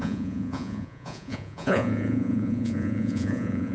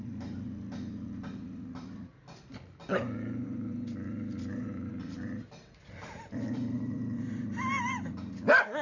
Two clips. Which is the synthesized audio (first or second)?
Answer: first